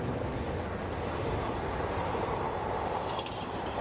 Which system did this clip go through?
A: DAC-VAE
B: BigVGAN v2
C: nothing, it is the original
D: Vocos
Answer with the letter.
C